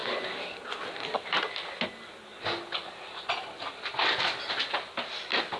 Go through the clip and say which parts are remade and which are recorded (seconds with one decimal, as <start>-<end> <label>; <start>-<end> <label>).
0.0-5.6 recorded